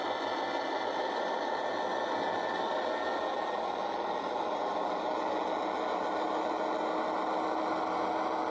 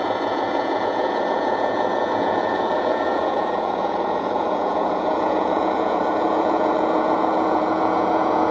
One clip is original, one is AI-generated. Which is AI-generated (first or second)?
second